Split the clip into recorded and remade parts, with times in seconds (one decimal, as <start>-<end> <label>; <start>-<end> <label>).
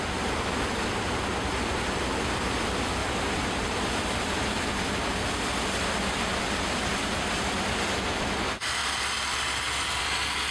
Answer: 0.0-8.8 remade; 8.8-10.0 recorded; 10.0-10.5 remade